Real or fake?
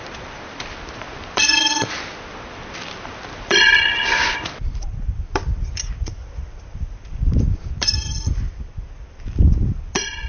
fake